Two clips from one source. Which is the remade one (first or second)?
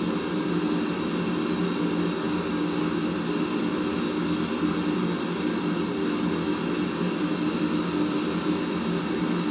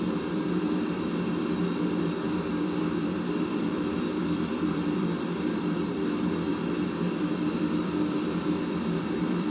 second